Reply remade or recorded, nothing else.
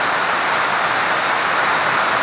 recorded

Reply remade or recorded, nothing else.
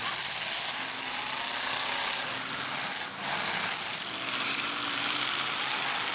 recorded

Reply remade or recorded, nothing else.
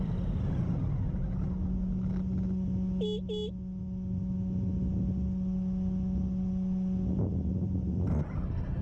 recorded